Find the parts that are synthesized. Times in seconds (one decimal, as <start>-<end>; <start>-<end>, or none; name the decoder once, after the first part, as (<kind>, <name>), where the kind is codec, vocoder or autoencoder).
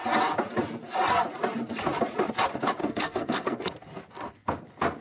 2.8-3.7 (codec, SNAC)